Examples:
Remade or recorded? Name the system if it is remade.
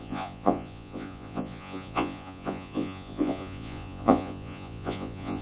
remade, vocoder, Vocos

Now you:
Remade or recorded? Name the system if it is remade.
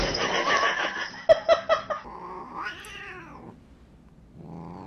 recorded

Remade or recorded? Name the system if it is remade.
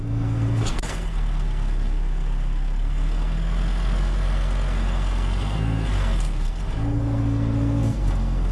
remade, codec, SNAC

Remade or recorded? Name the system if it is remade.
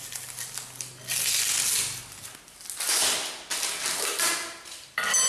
recorded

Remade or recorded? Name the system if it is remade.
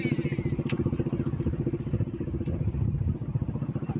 remade, vocoder, BigVGAN v2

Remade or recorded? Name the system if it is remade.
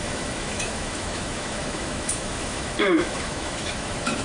remade, autoencoder, DAC-VAE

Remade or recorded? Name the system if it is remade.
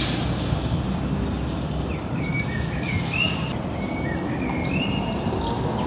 recorded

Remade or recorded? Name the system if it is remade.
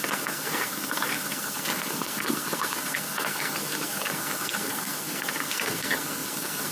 remade, codec, SNAC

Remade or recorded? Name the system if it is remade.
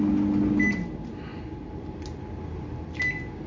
recorded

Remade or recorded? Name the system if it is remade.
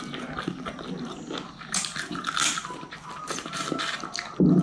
recorded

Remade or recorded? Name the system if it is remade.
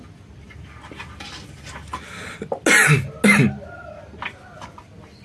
recorded